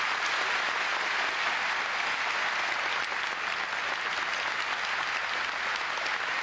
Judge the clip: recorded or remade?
recorded